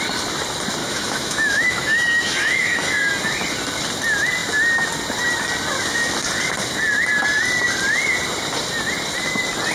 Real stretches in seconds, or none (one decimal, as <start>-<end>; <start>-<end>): 0.0-0.8; 3.1-9.7